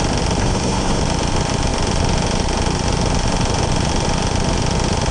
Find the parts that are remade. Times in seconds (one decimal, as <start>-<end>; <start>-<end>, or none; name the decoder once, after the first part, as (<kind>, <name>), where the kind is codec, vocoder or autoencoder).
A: 0.4-1.0 (codec, SNAC)